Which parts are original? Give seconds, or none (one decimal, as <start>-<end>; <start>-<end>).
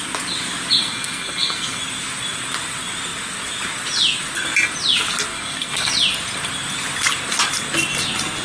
0.0-0.8; 1.8-5.3; 5.9-8.4